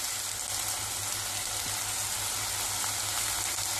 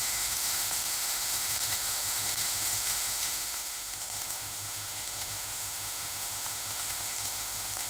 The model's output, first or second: second